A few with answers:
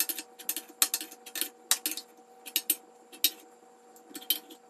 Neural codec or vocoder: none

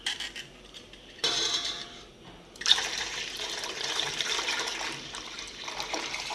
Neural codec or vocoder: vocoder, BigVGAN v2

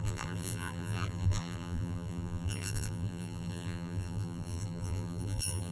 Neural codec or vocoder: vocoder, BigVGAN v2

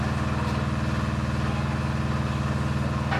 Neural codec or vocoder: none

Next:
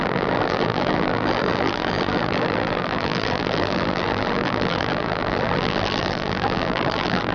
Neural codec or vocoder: vocoder, BigVGAN v2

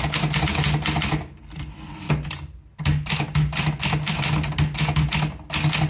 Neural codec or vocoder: none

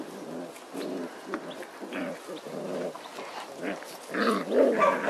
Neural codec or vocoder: none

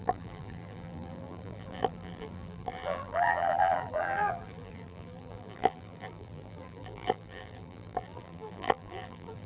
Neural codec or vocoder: vocoder, BigVGAN v2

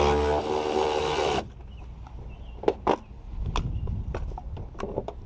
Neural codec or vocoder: none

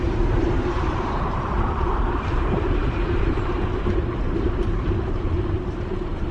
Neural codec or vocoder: vocoder, BigVGAN v2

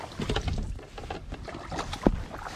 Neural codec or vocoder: none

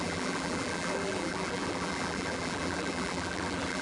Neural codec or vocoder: vocoder, BigVGAN v2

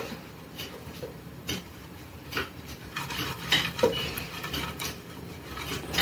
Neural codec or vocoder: vocoder, BigVGAN v2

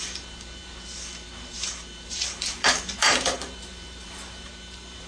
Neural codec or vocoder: vocoder, BigVGAN v2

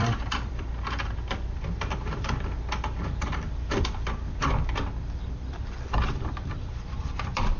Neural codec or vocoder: vocoder, BigVGAN v2